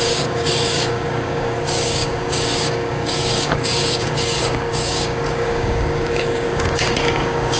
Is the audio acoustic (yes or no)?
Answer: no